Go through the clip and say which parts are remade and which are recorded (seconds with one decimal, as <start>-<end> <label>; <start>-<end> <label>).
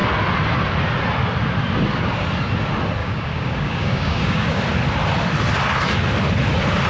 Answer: 0.0-3.0 recorded; 3.0-4.6 remade; 4.6-6.9 recorded